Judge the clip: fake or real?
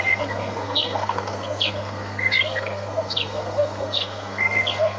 fake